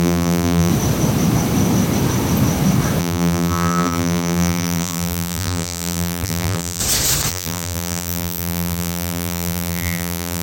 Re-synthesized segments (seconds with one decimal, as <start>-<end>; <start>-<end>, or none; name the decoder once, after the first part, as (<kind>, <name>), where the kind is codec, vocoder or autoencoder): 0.0-0.7 (vocoder, BigVGAN v2); 3.0-6.8; 7.3-10.4